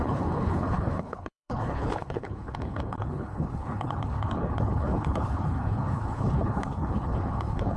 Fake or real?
fake